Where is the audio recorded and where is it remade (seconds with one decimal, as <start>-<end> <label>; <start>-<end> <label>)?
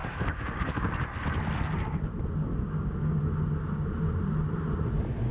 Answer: 0.0-0.9 remade; 0.9-2.5 recorded; 2.5-3.2 remade; 3.2-5.3 recorded